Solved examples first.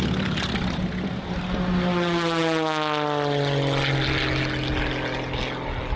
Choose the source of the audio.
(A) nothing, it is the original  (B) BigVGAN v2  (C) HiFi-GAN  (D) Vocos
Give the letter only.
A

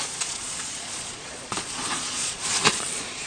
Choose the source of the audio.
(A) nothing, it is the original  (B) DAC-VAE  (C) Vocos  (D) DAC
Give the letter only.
C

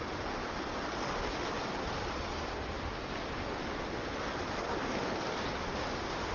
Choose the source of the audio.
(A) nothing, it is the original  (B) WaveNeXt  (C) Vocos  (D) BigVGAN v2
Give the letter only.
A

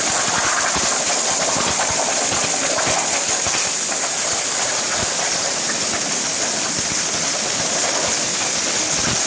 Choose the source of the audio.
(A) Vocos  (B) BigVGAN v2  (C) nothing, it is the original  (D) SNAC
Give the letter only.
C